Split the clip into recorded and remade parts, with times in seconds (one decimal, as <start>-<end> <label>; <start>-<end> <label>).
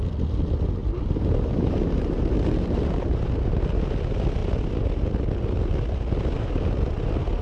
0.0-0.8 recorded; 0.8-3.7 remade; 3.7-7.4 recorded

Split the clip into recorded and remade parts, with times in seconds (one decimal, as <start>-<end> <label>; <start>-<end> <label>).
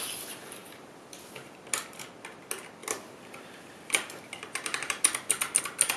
0.0-0.6 recorded; 0.6-1.2 remade; 1.2-6.0 recorded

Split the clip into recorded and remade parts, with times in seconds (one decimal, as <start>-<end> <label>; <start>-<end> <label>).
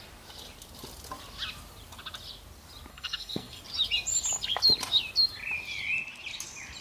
0.0-2.9 recorded; 2.9-3.6 remade; 3.6-6.8 recorded